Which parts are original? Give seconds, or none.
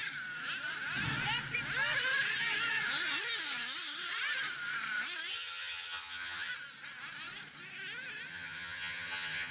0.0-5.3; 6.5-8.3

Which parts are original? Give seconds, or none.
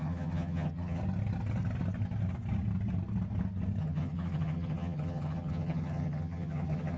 1.0-3.8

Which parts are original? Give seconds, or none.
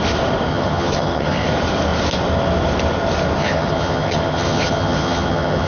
0.0-0.5; 1.5-3.4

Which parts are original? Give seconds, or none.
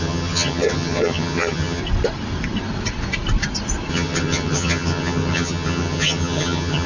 1.8-3.9